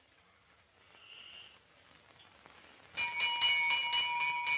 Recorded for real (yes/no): yes